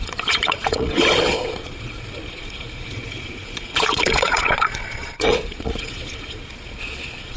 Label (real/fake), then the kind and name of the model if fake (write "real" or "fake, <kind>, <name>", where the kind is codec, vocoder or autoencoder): fake, vocoder, Vocos